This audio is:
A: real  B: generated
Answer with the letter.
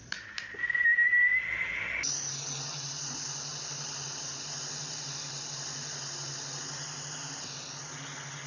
A